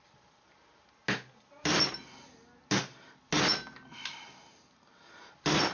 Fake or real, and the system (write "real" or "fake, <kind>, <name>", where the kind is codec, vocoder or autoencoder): real